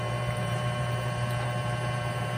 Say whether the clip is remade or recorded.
remade